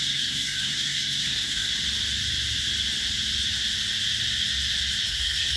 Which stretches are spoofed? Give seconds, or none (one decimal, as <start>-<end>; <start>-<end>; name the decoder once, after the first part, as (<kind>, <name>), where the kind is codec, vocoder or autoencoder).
0.0-1.7 (codec, SNAC); 5.1-5.6